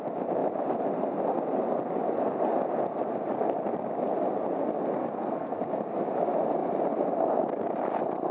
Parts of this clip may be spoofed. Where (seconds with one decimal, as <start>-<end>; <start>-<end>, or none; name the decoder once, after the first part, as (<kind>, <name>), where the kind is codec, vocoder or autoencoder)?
5.0-5.6 (codec, SNAC)